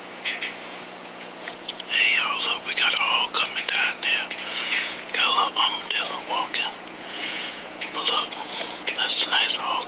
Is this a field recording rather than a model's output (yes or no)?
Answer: no